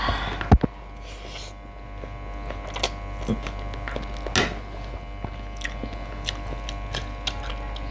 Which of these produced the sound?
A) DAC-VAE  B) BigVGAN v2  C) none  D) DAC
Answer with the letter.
C